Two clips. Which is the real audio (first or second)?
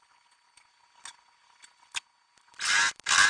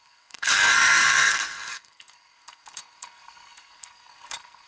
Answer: first